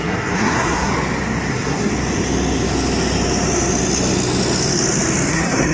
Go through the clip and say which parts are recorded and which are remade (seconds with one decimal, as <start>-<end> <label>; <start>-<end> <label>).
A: 0.0-0.9 remade; 0.9-1.5 recorded; 1.5-1.9 remade; 1.9-5.3 recorded; 5.3-5.7 remade